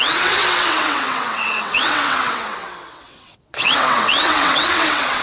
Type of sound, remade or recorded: remade